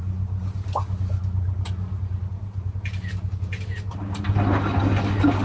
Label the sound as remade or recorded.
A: recorded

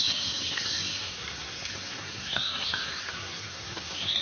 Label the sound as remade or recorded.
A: remade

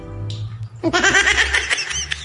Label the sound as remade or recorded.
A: recorded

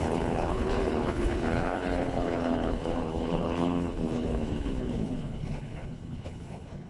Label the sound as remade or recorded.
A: remade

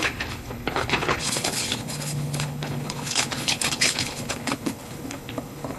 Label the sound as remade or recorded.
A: remade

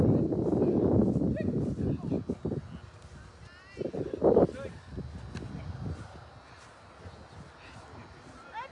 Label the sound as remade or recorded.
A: recorded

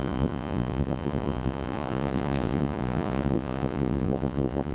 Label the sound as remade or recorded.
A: remade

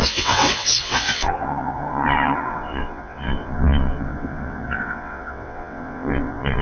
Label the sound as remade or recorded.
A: remade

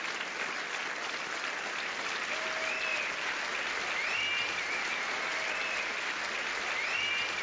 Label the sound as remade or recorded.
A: recorded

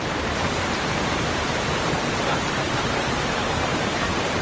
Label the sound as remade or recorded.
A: remade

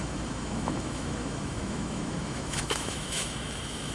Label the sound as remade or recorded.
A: remade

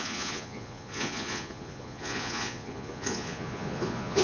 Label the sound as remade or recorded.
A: remade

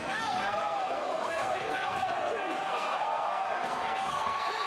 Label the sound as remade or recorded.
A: remade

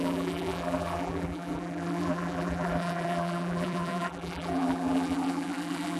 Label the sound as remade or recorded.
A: remade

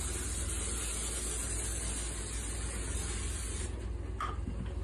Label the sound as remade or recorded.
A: recorded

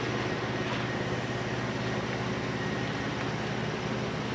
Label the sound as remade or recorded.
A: recorded